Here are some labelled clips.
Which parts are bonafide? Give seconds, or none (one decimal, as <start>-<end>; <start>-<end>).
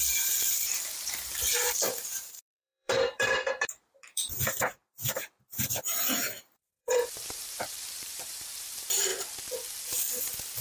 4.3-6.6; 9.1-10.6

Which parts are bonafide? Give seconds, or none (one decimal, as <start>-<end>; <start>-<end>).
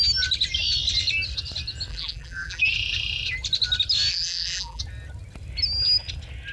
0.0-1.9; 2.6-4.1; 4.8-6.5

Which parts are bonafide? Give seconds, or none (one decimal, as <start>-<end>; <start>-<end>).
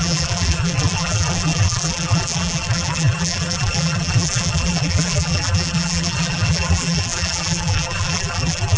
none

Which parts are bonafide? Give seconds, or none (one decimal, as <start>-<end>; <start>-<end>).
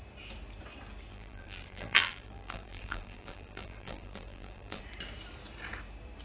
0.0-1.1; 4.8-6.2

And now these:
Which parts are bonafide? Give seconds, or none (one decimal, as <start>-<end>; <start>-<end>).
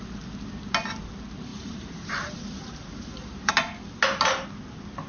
0.0-1.5; 3.5-5.1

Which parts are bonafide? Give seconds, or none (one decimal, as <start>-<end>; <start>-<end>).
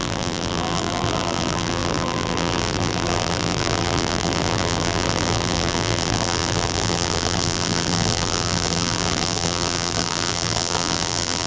none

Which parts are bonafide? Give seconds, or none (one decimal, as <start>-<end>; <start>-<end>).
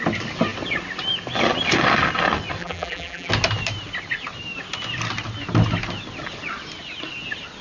0.0-2.6; 3.3-7.6